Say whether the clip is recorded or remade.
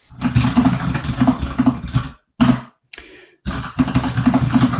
recorded